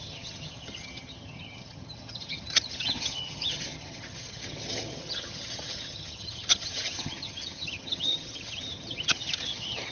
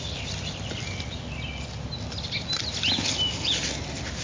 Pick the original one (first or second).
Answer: second